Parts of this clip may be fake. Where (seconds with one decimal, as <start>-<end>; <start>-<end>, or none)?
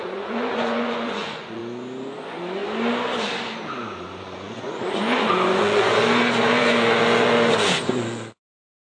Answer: 0.0-1.6; 2.2-2.6; 4.2-8.9